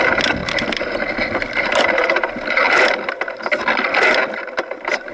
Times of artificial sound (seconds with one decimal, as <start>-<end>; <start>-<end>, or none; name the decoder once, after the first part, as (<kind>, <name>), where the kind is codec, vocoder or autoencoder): none